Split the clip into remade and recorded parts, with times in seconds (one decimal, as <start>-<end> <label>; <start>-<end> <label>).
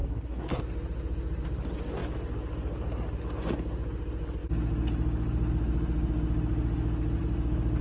0.0-0.6 remade; 0.6-7.8 recorded